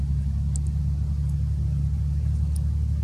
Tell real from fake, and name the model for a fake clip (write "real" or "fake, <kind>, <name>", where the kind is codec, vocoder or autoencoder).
real